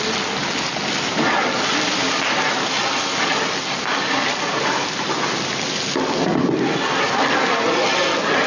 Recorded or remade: recorded